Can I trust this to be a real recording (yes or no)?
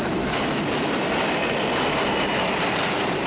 yes